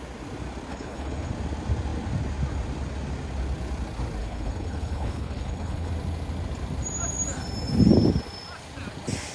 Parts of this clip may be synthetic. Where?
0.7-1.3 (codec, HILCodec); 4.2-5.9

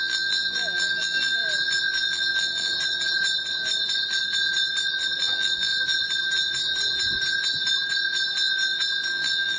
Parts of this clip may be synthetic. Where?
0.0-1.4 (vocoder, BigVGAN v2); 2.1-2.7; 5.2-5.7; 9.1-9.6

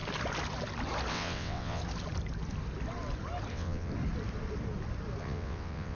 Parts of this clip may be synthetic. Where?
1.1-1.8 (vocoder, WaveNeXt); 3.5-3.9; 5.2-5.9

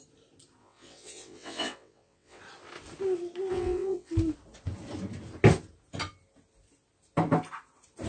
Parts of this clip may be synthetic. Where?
0.6-2.4 (vocoder, WaveNeXt); 3.5-4.1

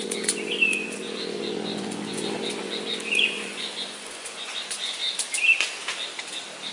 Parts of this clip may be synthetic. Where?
0.0-5.0 (vocoder, Vocos)

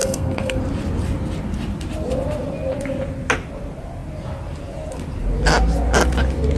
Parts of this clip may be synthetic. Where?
0.0-0.6 (codec, SNAC)

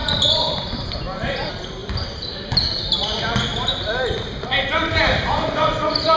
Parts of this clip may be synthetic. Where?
0.0-1.0 (vocoder, BigVGAN v2); 1.8-5.5